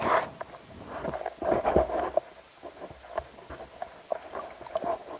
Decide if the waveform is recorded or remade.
recorded